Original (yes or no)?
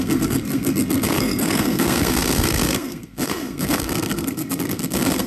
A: no